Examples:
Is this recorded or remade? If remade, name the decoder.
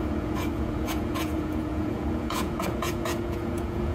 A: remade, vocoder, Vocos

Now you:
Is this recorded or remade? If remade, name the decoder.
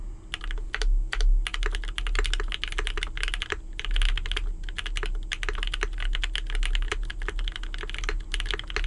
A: recorded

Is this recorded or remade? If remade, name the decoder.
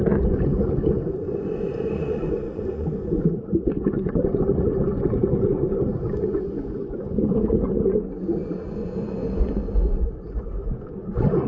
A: remade, vocoder, Vocos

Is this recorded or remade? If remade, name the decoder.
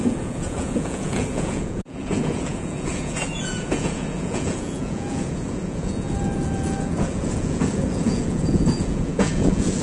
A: remade, vocoder, Vocos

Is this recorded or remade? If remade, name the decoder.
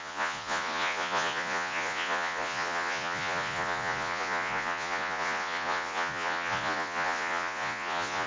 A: remade, vocoder, Vocos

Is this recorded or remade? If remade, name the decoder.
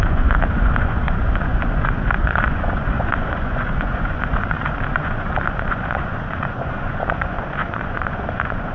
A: remade, vocoder, Vocos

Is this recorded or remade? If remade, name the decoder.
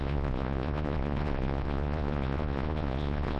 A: remade, vocoder, Vocos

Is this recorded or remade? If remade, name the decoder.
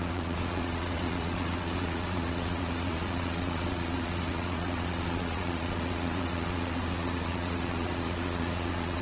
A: remade, vocoder, Vocos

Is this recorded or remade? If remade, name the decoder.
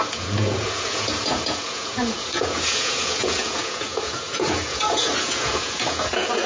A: remade, vocoder, Vocos